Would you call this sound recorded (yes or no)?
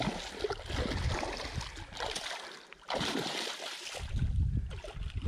yes